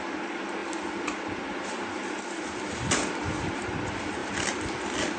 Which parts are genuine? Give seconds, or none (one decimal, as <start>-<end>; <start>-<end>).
0.0-0.6; 3.7-4.2